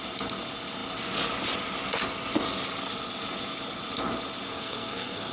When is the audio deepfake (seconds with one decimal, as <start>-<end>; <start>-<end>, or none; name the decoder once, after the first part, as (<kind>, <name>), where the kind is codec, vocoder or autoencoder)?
4.5-5.3 (codec, SNAC)